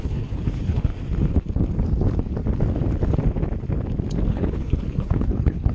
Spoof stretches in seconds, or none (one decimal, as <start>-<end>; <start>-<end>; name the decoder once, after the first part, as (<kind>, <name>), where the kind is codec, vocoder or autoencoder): 0.0-0.9 (codec, HILCodec); 4.3-5.7